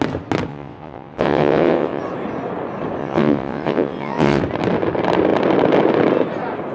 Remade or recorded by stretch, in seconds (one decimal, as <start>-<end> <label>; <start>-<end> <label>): 0.0-0.5 recorded; 0.5-2.0 remade; 2.0-3.0 recorded; 3.0-4.4 remade; 4.4-6.7 recorded